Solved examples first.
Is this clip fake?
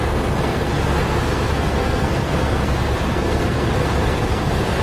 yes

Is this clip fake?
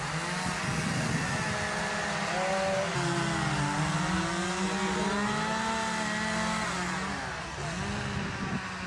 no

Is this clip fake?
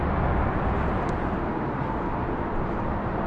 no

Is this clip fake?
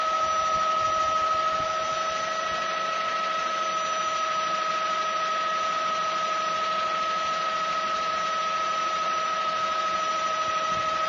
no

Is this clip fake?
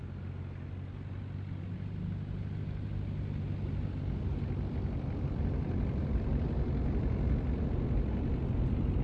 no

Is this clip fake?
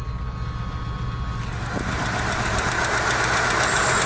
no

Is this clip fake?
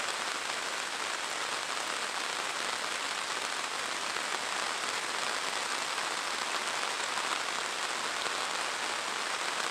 no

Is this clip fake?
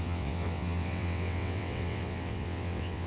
yes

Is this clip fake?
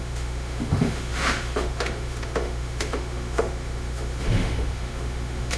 yes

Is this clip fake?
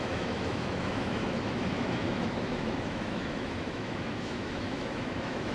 yes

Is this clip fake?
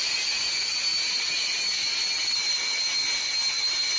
no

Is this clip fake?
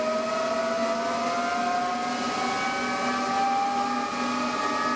no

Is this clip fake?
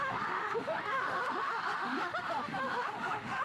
yes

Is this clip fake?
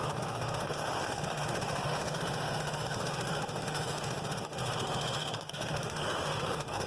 yes